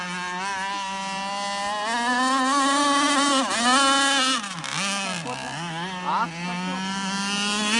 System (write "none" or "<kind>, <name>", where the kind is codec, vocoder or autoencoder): none